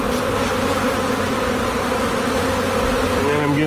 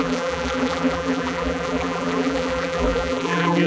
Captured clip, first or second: first